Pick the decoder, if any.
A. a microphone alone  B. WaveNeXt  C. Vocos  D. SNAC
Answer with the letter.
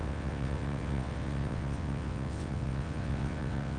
B